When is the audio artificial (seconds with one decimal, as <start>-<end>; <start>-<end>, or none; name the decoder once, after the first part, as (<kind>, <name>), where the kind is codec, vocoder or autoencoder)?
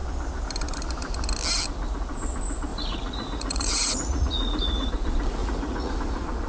2.7-4.9 (vocoder, Vocos); 5.4-5.9